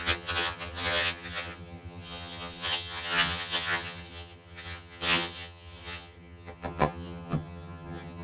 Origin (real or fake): fake